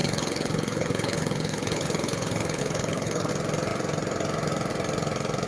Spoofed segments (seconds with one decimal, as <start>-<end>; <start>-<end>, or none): 0.0-3.3